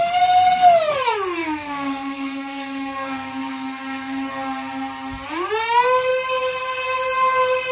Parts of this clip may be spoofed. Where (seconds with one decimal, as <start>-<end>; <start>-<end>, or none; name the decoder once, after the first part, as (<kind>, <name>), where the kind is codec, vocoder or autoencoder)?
1.4-4.3 (codec, DAC)